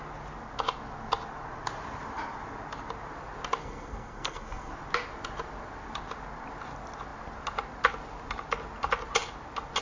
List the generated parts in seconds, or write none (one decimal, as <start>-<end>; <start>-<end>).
3.6-4.7